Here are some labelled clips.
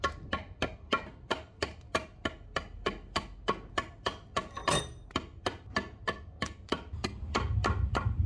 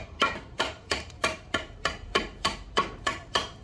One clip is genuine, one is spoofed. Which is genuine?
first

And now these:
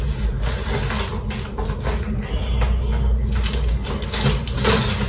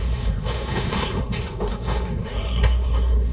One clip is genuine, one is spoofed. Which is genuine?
first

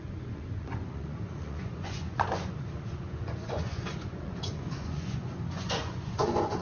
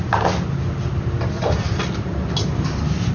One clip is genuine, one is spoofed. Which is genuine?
second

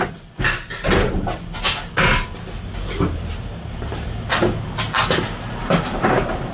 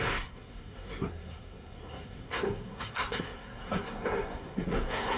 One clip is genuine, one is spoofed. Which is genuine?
first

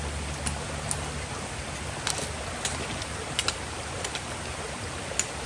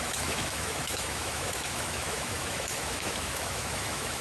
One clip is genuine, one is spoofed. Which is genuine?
first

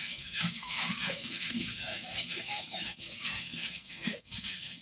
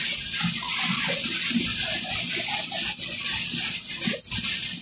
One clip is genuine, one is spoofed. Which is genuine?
second